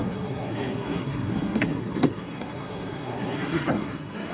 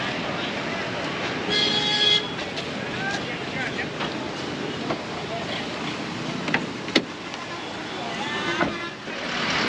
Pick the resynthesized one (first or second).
first